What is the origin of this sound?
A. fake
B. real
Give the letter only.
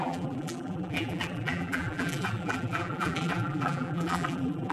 A